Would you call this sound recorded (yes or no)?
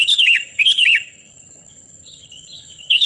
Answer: no